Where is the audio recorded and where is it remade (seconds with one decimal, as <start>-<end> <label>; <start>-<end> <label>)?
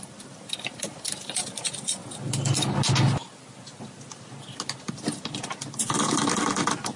0.0-2.0 remade; 2.0-4.9 recorded; 4.9-7.0 remade